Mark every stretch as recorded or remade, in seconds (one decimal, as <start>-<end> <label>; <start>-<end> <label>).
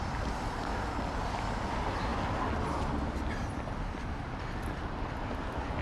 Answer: 0.0-5.8 recorded